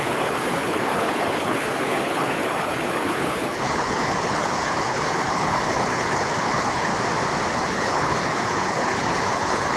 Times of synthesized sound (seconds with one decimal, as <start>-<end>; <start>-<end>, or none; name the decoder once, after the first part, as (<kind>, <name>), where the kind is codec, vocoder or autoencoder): 0.0-6.9 (codec, HILCodec); 7.5-9.8